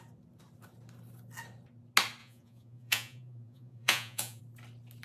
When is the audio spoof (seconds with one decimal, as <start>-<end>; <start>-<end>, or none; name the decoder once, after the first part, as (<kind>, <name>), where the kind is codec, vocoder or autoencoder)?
2.2-4.4 (vocoder, Vocos)